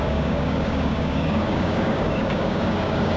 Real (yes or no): no